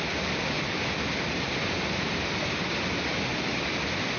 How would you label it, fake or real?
real